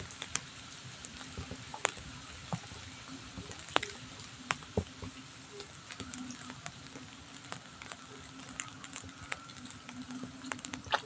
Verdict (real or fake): real